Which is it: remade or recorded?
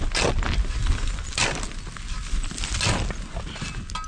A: recorded